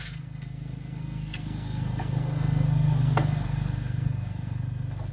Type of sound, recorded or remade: remade